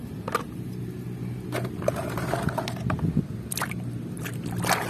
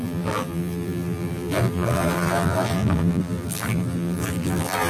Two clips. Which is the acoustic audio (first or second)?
first